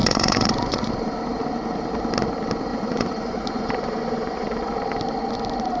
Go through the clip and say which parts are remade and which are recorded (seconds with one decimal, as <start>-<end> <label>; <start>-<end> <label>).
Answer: 0.0-0.9 remade; 0.9-2.7 recorded; 2.7-4.6 remade; 4.6-5.8 recorded